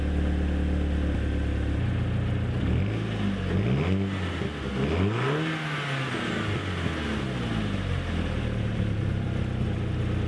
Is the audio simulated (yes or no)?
no